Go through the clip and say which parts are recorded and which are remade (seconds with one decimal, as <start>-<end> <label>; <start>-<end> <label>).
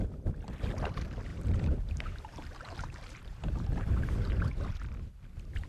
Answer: 0.0-1.3 recorded; 1.3-4.7 remade; 4.7-5.7 recorded